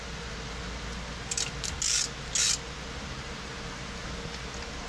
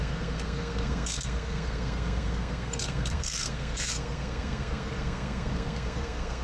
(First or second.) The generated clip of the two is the second